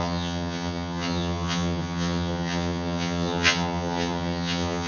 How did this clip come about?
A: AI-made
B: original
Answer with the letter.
A